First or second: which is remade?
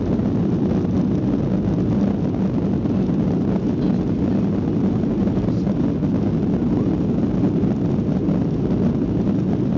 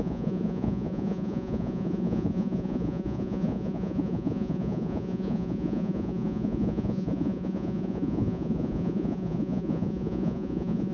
second